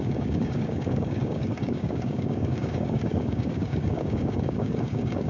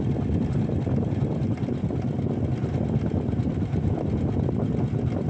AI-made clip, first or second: first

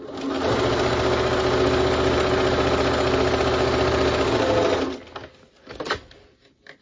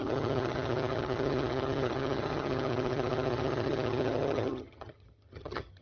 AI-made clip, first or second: second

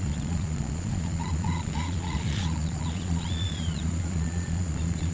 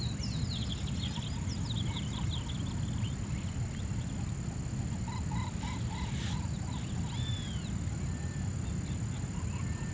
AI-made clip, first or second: first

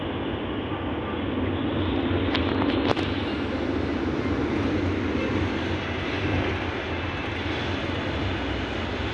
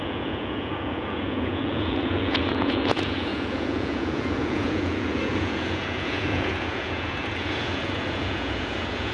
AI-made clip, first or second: second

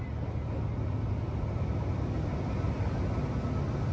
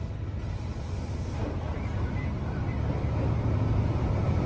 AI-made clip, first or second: second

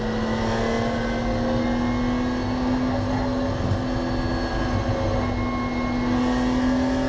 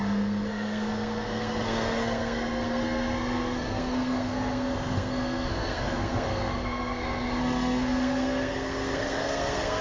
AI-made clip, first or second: second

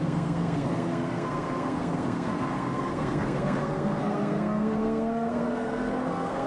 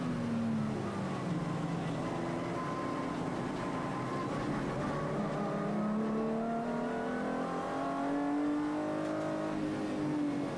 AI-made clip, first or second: first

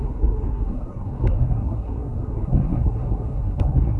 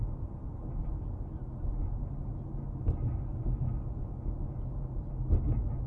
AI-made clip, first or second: first